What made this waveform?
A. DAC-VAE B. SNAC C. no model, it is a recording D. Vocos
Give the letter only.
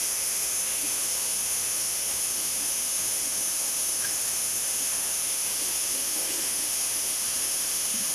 A